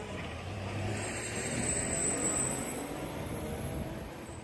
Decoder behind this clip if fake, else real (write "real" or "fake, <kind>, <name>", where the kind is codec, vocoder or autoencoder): fake, vocoder, BigVGAN v2